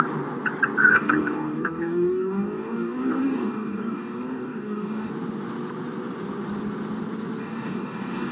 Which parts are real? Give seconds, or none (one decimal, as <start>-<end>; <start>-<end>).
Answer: 0.0-0.9; 5.1-7.4